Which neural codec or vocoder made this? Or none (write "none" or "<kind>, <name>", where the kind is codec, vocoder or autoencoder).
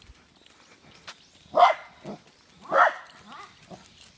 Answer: none